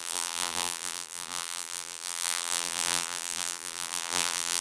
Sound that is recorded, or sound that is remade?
remade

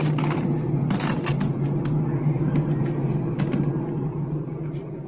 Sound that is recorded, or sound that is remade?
recorded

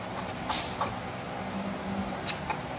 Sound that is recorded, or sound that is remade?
recorded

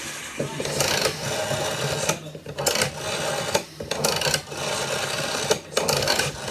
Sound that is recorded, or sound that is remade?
recorded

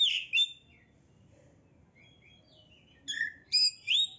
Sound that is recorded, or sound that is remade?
recorded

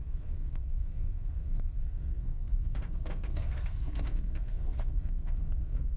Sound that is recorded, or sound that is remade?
remade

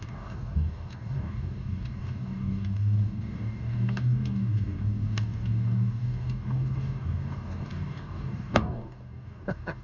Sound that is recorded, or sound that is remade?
remade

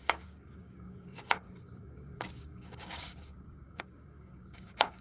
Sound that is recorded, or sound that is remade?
remade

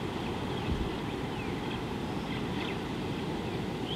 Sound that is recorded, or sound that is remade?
recorded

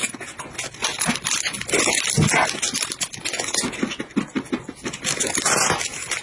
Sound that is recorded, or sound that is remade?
recorded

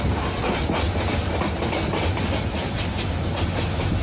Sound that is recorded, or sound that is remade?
recorded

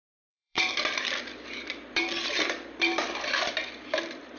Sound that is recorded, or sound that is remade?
remade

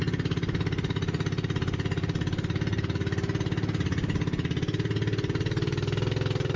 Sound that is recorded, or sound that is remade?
recorded